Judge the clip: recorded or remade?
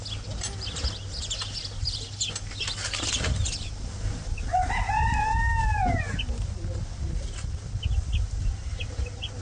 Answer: recorded